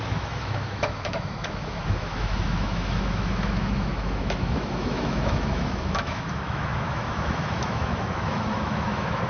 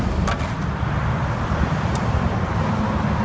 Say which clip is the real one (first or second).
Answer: second